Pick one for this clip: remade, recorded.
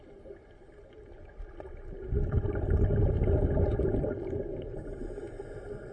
recorded